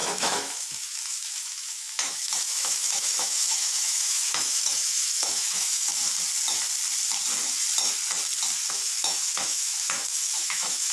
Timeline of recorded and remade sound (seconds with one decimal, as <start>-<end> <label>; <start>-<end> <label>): 0.0-6.0 remade; 6.0-8.7 recorded; 8.7-10.9 remade